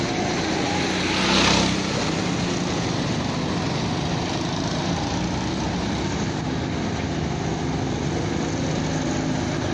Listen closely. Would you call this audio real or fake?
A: real